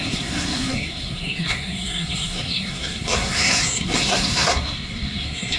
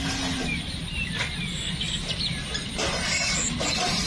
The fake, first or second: first